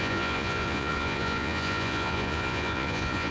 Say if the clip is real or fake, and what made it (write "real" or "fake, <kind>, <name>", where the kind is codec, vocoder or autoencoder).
fake, vocoder, Vocos